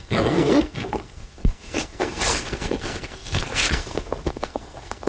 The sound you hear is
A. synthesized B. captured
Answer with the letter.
A